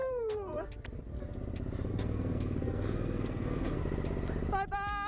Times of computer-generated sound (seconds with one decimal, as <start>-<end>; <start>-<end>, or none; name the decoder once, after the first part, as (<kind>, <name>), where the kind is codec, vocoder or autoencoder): 0.0-0.7 (codec, SNAC); 1.9-3.8